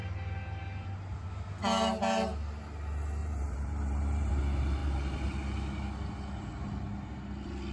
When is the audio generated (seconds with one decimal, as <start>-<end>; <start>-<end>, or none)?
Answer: 3.2-4.3